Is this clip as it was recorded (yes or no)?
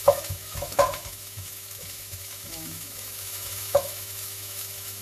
no